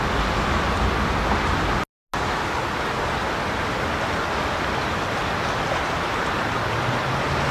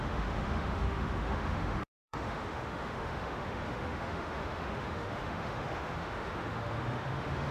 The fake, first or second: second